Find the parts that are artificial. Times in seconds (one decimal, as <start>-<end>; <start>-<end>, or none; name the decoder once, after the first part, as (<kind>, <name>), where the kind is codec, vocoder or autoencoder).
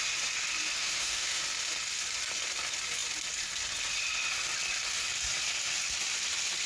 0.8-1.4 (autoencoder, DAC-VAE)